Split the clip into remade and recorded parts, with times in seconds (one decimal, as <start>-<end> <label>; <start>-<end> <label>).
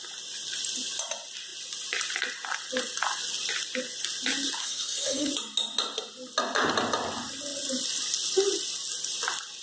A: 0.0-4.6 recorded; 4.6-5.3 remade; 5.3-9.6 recorded